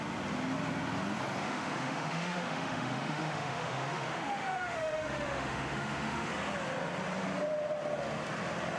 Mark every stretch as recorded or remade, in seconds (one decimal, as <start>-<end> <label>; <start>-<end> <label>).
0.0-1.4 recorded; 1.4-6.3 remade; 6.3-8.8 recorded